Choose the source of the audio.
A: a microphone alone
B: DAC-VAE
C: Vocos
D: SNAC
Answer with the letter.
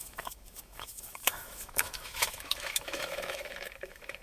B